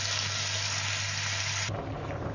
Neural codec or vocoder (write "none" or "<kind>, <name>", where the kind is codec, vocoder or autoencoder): none